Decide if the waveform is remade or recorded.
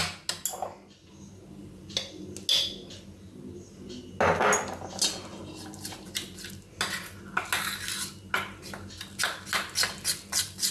recorded